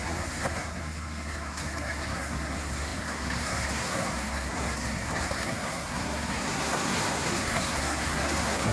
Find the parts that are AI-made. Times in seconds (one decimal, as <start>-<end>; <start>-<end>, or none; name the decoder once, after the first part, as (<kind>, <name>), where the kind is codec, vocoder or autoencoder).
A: 0.0-8.7 (codec, SNAC)